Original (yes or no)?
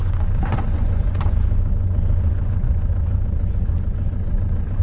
no